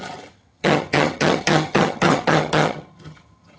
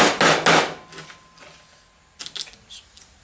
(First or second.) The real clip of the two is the second